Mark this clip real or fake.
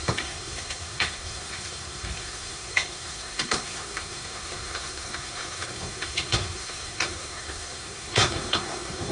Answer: fake